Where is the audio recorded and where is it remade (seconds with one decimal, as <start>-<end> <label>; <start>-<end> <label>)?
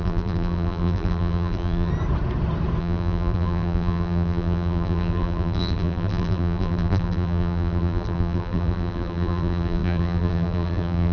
0.0-1.9 remade; 1.9-2.8 recorded; 2.8-11.1 remade